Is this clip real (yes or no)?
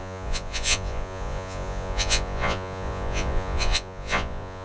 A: no